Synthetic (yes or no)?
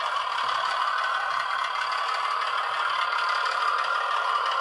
no